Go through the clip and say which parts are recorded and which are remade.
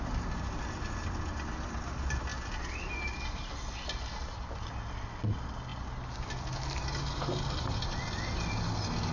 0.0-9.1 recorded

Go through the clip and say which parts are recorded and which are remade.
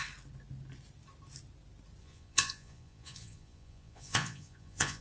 0.0-2.0 recorded; 2.0-5.0 remade